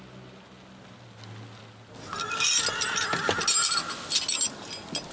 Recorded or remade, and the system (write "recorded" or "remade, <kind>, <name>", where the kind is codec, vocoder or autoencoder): recorded